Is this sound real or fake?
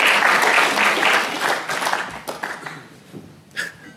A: real